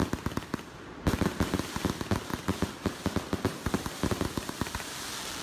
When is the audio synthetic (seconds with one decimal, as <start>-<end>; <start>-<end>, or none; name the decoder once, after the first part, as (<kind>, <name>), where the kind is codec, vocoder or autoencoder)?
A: none